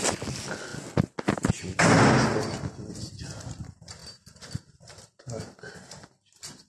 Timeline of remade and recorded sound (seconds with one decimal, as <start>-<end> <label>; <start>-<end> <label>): 0.0-6.7 recorded